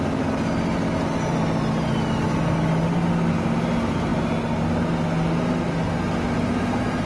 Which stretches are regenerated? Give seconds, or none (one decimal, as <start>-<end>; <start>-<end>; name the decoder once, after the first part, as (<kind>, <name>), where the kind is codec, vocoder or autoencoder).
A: none